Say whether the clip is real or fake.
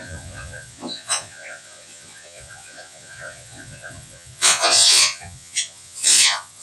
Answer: fake